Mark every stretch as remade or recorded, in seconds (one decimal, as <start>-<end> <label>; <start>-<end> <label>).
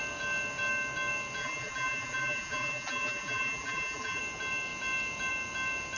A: 0.0-1.4 recorded; 1.4-4.2 remade; 4.2-6.0 recorded